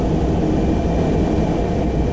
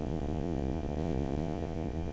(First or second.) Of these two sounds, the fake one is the second